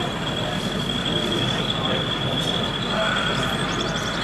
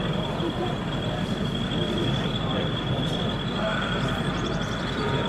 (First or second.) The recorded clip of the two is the first